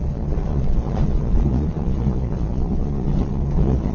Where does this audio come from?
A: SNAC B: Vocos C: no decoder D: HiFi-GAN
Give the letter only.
B